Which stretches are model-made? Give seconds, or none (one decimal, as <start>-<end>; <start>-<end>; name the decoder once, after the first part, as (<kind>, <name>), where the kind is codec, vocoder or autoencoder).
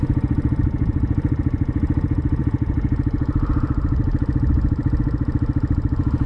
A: none